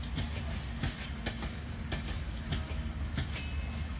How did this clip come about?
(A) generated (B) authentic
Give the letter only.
B